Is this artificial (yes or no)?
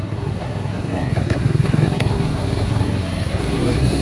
yes